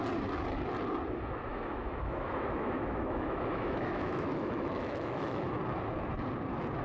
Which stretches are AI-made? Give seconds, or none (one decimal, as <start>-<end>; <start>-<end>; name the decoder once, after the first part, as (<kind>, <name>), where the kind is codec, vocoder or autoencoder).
1.5-5.6 (autoencoder, DAC-VAE)